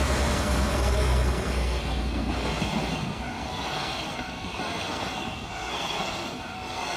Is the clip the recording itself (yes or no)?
no